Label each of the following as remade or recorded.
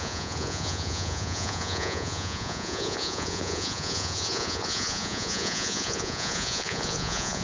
remade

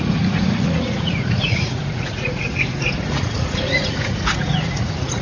remade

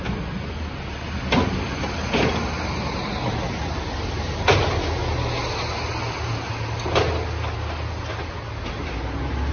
recorded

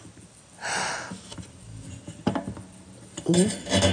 recorded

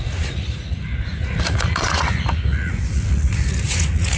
remade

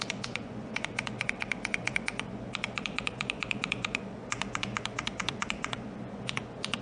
remade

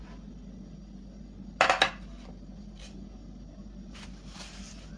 recorded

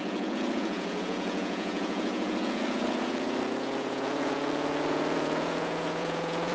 remade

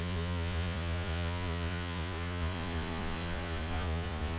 remade